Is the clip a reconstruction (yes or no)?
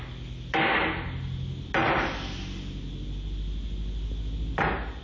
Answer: no